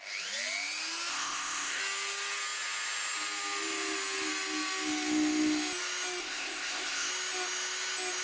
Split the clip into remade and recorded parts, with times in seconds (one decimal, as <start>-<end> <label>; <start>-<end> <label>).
0.0-1.1 recorded; 1.1-1.8 remade; 1.8-6.2 recorded; 6.2-7.1 remade; 7.1-8.2 recorded